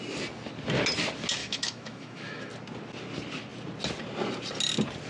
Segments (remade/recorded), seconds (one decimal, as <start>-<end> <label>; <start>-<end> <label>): 0.0-1.4 recorded; 1.4-2.5 remade; 2.5-5.1 recorded